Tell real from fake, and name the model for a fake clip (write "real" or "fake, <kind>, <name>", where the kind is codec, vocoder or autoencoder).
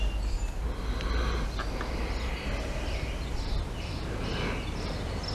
real